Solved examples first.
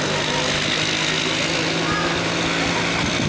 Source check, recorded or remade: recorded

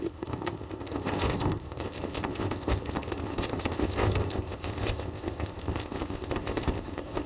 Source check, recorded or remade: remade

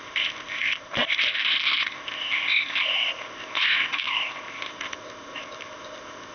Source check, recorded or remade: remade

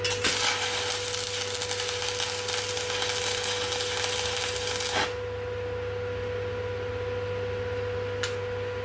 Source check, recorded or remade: recorded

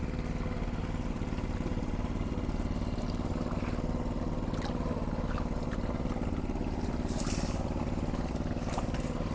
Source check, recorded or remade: recorded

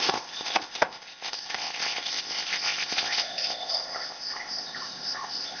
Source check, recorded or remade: remade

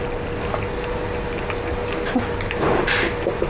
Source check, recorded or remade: recorded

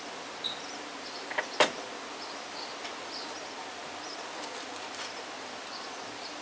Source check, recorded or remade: recorded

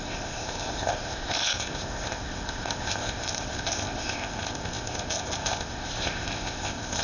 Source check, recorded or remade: remade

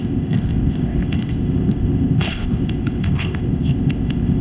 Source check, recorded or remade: remade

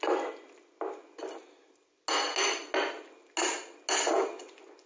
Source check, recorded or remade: recorded